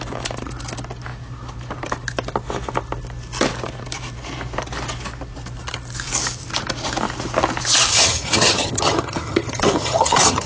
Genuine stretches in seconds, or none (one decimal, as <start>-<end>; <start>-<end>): 0.0-7.9